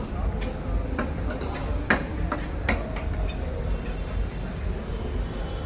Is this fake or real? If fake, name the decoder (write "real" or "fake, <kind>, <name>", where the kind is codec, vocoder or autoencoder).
real